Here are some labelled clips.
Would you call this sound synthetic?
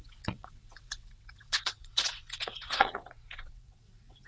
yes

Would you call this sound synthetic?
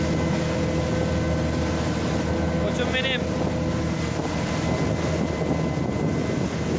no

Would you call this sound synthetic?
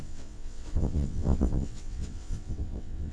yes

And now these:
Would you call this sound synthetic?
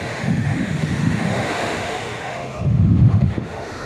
yes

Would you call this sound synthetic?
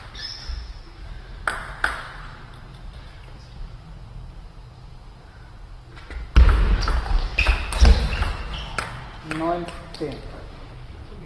no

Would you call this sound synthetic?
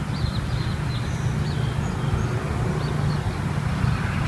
no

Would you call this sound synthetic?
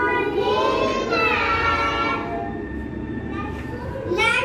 no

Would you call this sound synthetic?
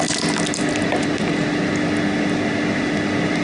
no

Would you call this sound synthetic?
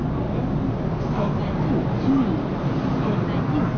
no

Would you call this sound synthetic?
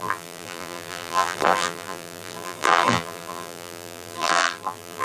yes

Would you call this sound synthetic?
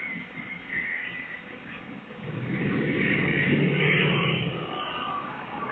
yes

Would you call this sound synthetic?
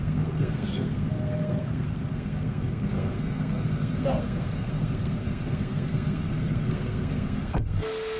yes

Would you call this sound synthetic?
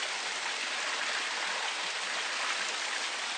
no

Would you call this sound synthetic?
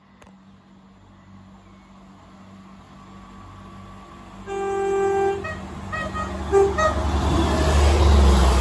no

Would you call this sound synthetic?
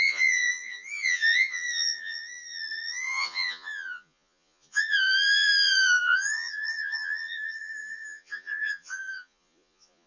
yes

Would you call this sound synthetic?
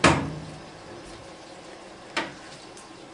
yes